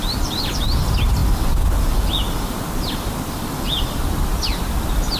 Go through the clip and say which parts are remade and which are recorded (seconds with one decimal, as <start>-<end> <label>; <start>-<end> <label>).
0.0-1.2 remade; 1.2-3.3 recorded; 3.3-5.2 remade